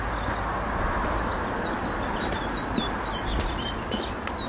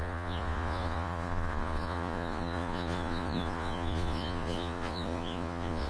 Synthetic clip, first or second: second